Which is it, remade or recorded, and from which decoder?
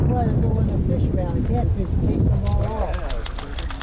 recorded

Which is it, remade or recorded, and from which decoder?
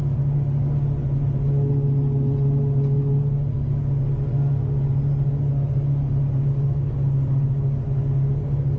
recorded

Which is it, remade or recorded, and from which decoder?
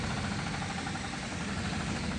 remade, vocoder, BigVGAN v2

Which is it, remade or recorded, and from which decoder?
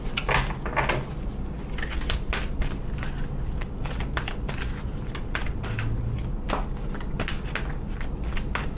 recorded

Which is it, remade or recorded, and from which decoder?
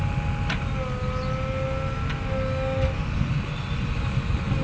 recorded